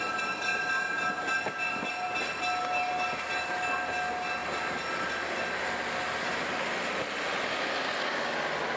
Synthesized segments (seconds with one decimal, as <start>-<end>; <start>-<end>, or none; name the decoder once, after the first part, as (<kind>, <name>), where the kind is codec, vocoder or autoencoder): none